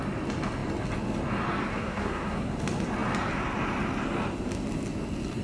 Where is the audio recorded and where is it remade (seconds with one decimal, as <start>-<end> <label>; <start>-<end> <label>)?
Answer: 0.0-1.7 recorded; 1.7-2.5 remade; 2.5-5.4 recorded